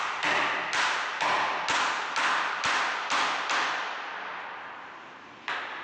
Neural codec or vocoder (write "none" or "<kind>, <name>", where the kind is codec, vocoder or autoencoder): none